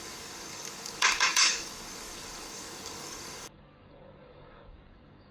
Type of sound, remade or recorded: remade